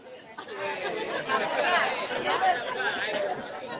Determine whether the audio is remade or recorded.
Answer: recorded